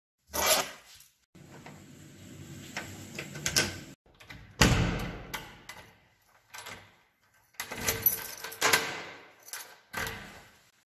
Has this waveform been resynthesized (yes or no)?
no